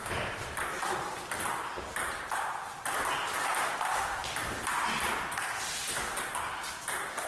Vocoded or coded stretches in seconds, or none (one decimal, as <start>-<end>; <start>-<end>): none